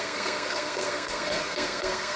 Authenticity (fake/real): fake